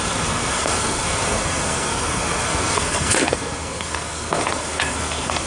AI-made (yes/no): yes